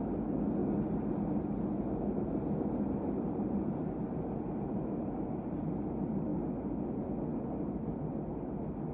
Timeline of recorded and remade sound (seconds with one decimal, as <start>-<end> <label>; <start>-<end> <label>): 0.0-8.9 recorded